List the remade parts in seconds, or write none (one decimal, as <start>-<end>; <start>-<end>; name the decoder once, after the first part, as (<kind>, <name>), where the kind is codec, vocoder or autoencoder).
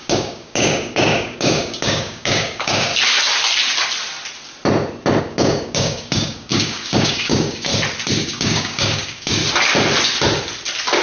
0.0-2.9 (codec, DAC); 5.2-7.7; 8.2-9.4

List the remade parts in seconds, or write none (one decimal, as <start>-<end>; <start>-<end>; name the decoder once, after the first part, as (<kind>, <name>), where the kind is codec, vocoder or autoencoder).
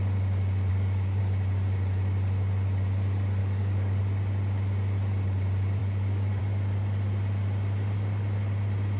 0.7-1.2 (codec, DAC); 3.4-4.0; 5.8-6.4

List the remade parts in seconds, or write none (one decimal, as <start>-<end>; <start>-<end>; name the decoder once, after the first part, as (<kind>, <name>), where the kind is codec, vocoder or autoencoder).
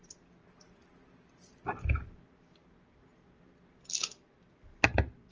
none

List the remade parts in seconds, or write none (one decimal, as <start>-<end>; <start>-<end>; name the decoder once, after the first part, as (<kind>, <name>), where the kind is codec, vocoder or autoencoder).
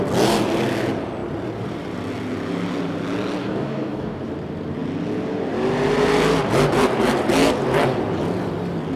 3.4-4.2 (codec, DAC)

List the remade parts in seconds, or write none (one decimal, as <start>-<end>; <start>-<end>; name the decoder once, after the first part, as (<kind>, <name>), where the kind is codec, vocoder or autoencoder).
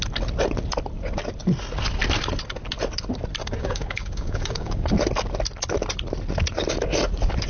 3.4-4.9 (codec, DAC)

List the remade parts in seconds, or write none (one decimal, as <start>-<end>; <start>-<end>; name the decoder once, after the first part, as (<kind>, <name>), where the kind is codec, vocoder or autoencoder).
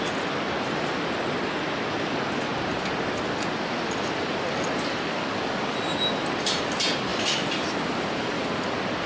none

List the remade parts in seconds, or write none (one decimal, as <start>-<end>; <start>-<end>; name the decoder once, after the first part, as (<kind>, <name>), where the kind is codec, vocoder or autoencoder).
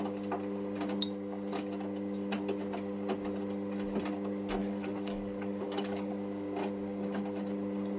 4.6-6.1 (codec, DAC)